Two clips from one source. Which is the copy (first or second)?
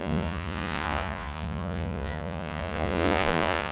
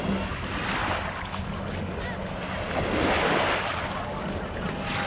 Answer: first